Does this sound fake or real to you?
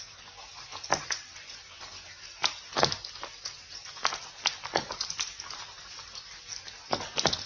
real